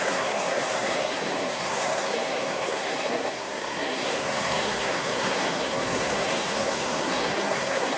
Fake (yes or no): yes